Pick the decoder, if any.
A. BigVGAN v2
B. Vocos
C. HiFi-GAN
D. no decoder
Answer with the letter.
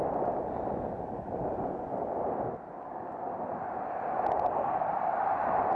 D